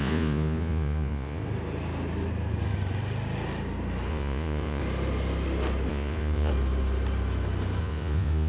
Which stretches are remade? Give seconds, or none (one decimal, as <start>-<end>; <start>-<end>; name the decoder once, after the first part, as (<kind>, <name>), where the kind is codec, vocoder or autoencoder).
0.0-1.4 (vocoder, Vocos); 4.1-4.8; 5.9-6.5; 7.8-8.5